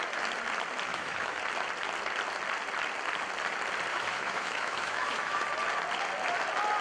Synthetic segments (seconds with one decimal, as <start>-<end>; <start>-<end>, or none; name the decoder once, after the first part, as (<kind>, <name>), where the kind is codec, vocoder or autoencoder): 0.9-1.4 (autoencoder, DAC-VAE); 3.9-5.4